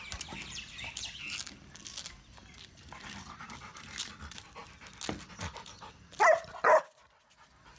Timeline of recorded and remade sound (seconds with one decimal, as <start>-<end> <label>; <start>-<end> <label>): 0.0-7.8 recorded